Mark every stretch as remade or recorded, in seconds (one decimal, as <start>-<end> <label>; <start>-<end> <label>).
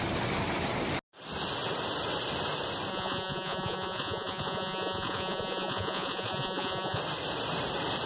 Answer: 0.0-2.9 recorded; 2.9-7.0 remade; 7.0-8.1 recorded